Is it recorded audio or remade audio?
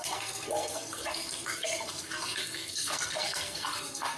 remade